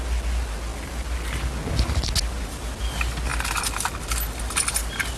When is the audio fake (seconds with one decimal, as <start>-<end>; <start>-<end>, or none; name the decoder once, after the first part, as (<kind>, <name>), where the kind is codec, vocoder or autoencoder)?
none